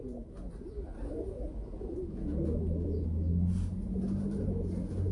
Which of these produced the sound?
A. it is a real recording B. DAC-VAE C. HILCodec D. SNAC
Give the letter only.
A